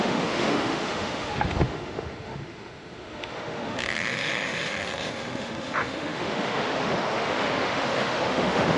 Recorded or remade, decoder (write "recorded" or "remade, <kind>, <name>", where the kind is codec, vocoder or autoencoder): remade, autoencoder, DAC-VAE